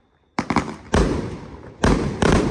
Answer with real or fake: real